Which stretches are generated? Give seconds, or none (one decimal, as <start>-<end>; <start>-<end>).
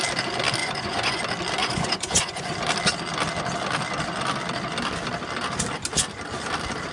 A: 0.6-1.2; 1.6-2.5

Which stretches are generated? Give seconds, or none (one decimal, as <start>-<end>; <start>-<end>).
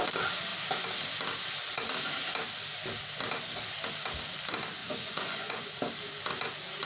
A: 4.8-5.7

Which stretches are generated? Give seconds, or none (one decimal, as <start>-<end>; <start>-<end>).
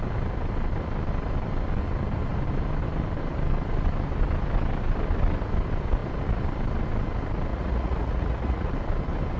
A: 7.5-8.7